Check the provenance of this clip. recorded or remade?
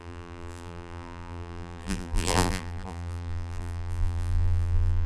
remade